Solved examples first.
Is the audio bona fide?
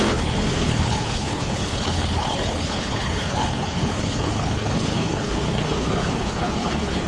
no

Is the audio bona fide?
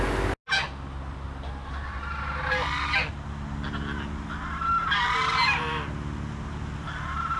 yes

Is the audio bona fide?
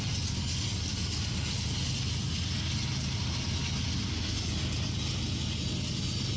yes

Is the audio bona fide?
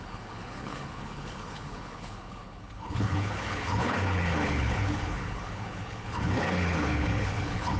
no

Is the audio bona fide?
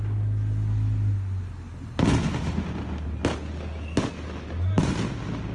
yes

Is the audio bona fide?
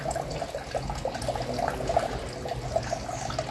yes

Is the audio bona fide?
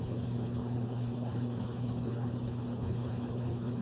no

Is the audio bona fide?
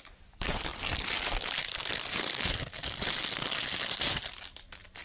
yes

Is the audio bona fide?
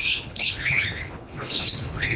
no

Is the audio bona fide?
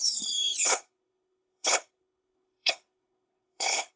no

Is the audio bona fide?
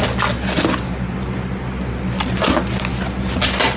yes